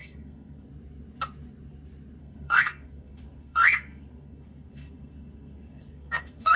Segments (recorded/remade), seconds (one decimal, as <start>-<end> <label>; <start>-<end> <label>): 0.0-0.7 remade; 0.7-2.2 recorded; 2.2-6.6 remade